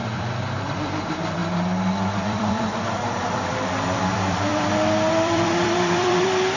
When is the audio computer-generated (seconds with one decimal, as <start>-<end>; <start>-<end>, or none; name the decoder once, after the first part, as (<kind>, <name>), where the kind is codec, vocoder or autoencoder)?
0.0-1.4 (vocoder, BigVGAN v2); 2.2-4.5; 5.1-6.6